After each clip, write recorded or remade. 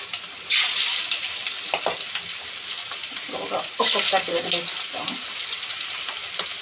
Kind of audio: recorded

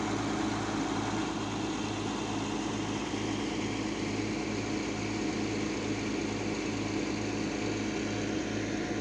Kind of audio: recorded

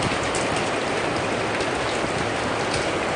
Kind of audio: recorded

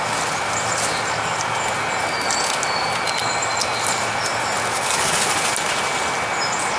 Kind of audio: recorded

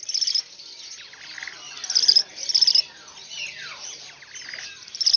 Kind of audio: recorded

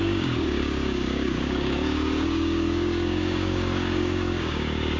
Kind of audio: remade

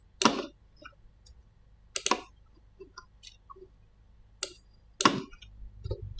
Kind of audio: recorded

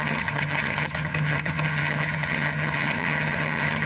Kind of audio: remade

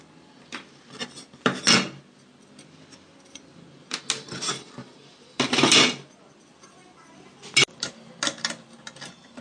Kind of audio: recorded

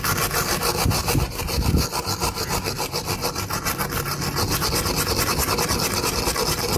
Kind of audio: recorded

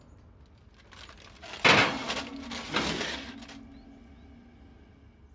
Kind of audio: recorded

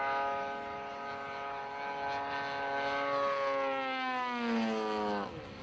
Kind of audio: recorded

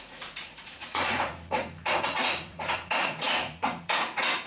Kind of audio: remade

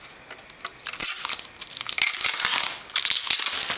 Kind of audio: recorded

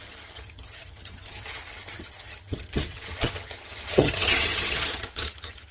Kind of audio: remade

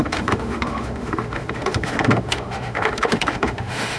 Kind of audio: remade